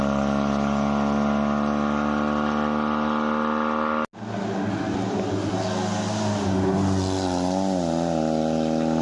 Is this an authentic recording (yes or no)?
yes